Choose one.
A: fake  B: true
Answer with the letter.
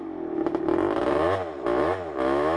A